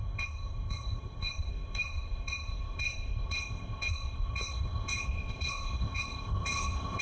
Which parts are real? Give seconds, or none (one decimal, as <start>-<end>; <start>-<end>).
none